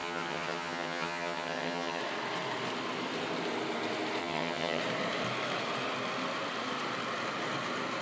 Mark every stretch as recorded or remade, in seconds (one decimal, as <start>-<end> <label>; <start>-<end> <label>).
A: 0.0-2.0 remade; 2.0-4.2 recorded; 4.2-4.8 remade; 4.8-8.0 recorded

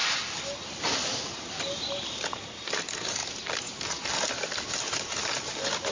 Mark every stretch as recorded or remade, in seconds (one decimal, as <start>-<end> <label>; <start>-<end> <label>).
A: 0.0-5.9 recorded

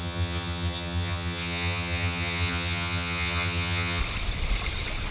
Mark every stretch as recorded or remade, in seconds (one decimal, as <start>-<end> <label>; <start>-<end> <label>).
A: 0.0-4.0 remade; 4.0-5.1 recorded

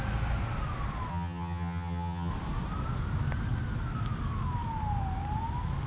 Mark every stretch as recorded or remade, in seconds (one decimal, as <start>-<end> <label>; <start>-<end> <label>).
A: 0.0-1.1 recorded; 1.1-2.3 remade; 2.3-5.9 recorded